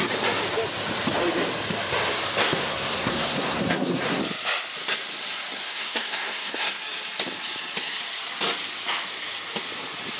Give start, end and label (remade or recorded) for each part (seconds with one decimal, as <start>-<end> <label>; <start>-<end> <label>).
0.0-2.4 recorded; 2.4-4.2 remade; 4.2-5.7 recorded; 5.7-6.8 remade; 6.8-10.2 recorded